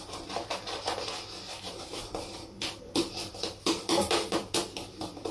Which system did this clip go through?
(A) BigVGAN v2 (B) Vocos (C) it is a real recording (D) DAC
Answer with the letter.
A